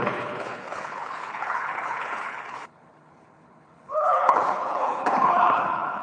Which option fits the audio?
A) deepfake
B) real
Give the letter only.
A